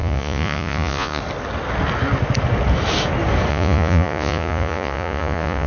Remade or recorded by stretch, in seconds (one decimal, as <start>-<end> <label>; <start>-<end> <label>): 0.0-1.2 remade; 1.2-3.5 recorded; 3.5-5.7 remade